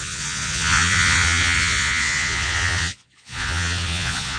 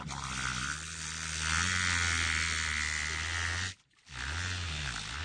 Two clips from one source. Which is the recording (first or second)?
second